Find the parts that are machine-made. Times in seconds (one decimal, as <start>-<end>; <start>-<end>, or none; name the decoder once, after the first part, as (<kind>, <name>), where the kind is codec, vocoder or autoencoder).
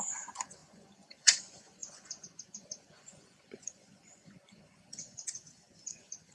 0.0-6.3 (vocoder, Vocos)